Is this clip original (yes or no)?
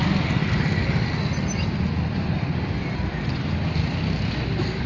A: yes